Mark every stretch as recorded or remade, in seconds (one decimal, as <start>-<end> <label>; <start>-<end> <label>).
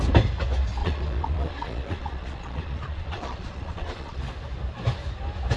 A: 0.0-0.8 recorded; 0.8-4.2 remade; 4.2-5.6 recorded